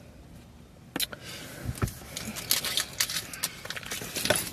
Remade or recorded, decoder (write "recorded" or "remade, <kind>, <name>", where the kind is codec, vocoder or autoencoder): recorded